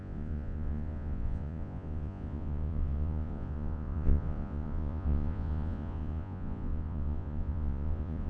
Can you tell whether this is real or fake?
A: fake